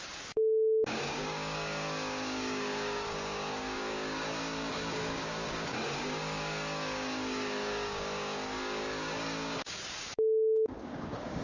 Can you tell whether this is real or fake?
fake